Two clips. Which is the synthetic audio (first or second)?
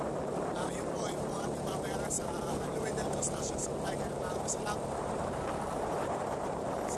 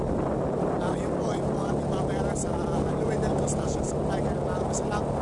first